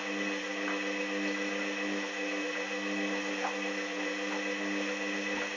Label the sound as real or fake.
real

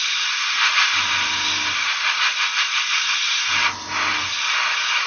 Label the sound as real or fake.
real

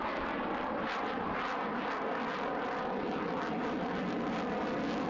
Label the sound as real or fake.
real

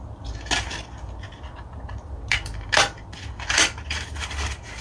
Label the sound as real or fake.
real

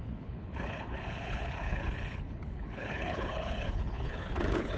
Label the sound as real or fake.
fake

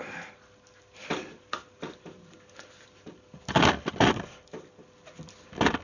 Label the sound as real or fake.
real